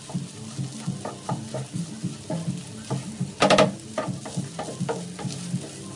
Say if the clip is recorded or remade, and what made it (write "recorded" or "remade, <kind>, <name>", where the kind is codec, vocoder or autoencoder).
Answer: recorded